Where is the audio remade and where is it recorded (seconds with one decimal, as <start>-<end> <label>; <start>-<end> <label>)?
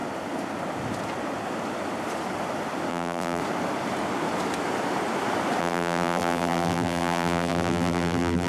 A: 0.0-2.9 recorded; 2.9-3.4 remade; 3.4-5.6 recorded; 5.6-8.5 remade